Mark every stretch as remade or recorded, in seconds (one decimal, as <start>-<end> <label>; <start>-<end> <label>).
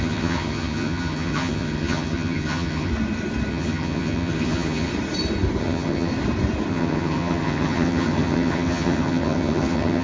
0.0-2.9 remade; 2.9-3.5 recorded; 3.5-4.9 remade; 4.9-5.6 recorded; 5.6-6.1 remade; 6.1-6.7 recorded; 6.7-10.0 remade